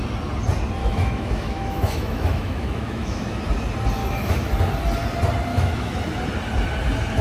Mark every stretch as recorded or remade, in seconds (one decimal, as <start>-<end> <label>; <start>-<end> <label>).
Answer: 0.0-0.8 recorded; 0.8-3.4 remade; 3.4-4.0 recorded; 4.0-4.5 remade; 4.5-5.5 recorded; 5.5-6.0 remade; 6.0-7.2 recorded